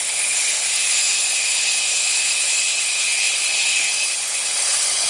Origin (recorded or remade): remade